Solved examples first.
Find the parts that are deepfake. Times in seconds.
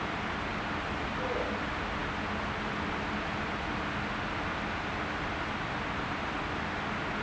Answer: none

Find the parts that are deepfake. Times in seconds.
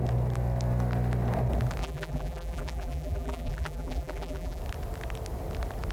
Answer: 1.8-4.6 (vocoder, BigVGAN v2)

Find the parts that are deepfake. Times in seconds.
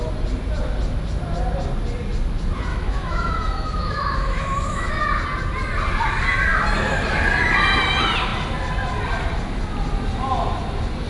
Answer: 2.7-4.9 (autoencoder, DAC-VAE)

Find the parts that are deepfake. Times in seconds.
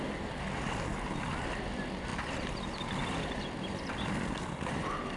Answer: none